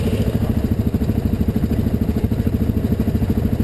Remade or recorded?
recorded